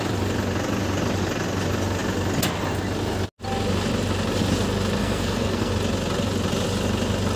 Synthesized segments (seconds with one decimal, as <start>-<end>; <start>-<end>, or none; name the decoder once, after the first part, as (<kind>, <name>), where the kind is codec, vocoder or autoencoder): 5.0-5.7 (codec, SNAC)